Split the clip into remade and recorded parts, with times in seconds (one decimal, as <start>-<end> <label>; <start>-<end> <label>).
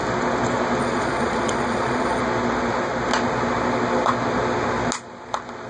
0.0-0.8 recorded; 0.8-2.2 remade; 2.2-5.7 recorded